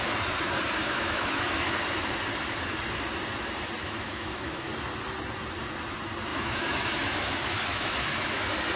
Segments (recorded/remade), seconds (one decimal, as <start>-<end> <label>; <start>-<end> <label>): 0.0-0.8 recorded; 0.8-1.7 remade; 1.7-3.8 recorded; 3.8-4.7 remade; 4.7-6.3 recorded; 6.3-8.4 remade; 8.4-8.8 recorded